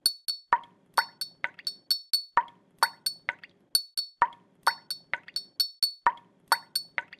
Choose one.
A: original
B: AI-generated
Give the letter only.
A